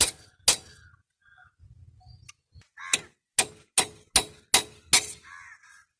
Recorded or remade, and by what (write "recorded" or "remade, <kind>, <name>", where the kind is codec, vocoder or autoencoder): recorded